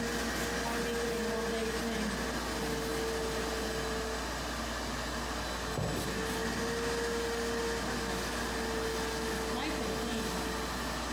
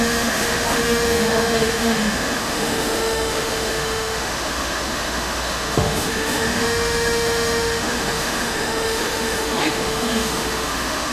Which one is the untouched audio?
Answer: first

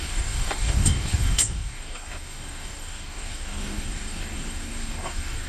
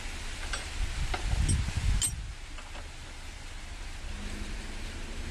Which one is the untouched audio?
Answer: second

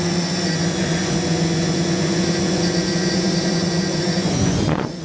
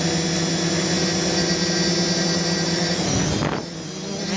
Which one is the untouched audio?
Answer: second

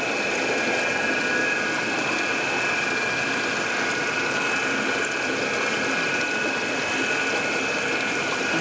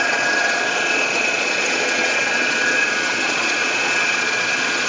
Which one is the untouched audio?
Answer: first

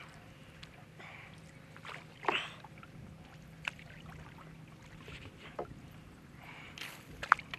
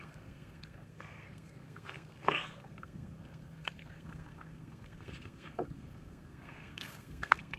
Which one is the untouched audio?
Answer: first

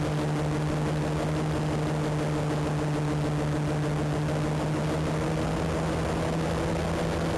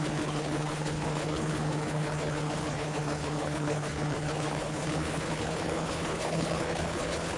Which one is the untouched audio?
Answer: first